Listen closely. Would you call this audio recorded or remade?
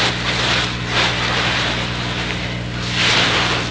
recorded